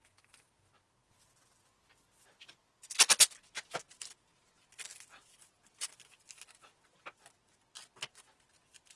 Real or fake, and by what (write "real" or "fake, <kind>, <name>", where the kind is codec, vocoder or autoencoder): real